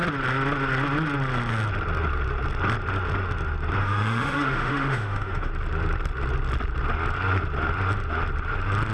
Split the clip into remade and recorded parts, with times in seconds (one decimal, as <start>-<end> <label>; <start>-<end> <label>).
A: 0.0-3.8 recorded; 3.8-5.5 remade; 5.5-8.9 recorded